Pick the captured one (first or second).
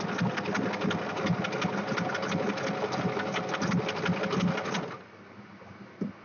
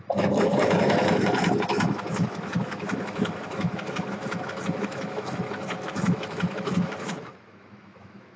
first